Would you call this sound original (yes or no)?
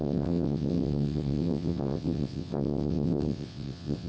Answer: no